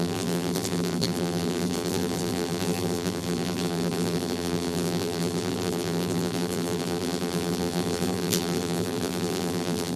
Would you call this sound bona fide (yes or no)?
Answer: no